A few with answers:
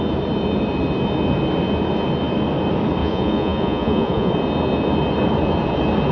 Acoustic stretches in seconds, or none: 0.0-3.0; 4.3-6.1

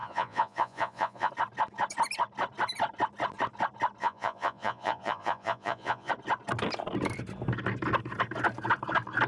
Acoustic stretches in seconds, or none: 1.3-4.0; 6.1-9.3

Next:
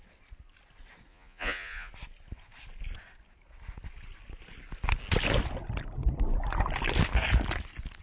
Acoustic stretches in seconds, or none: 0.0-1.1; 1.9-8.0

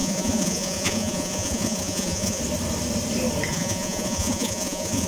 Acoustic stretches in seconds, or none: 2.4-3.5

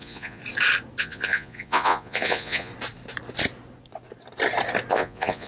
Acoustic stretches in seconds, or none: 0.4-1.0; 2.7-4.9